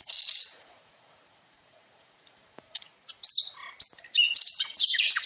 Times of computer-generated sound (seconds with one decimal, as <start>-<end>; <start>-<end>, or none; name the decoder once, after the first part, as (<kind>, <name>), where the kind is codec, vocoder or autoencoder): 0.0-2.9 (vocoder, Vocos); 4.2-5.3